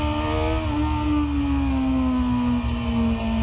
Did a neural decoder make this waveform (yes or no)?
no